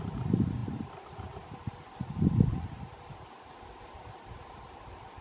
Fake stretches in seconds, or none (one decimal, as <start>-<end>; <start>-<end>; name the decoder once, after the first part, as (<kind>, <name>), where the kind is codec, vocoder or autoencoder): none